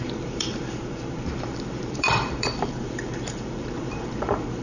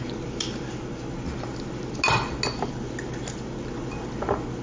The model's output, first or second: first